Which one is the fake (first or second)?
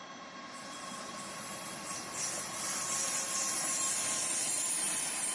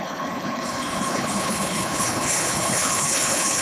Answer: second